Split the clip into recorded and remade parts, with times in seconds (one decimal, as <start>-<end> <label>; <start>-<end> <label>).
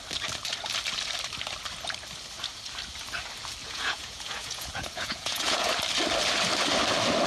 0.0-3.6 recorded; 3.6-5.7 remade; 5.7-7.3 recorded